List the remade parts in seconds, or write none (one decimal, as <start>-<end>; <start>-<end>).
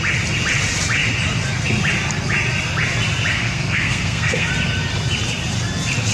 3.3-4.5